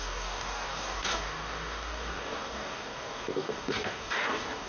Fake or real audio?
fake